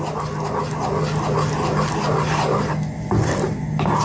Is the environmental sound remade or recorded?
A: recorded